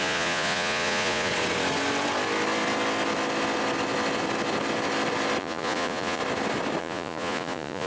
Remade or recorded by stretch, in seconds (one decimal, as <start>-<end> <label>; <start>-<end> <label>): 0.0-1.3 remade; 1.3-5.4 recorded; 5.4-6.2 remade; 6.2-6.8 recorded; 6.8-7.9 remade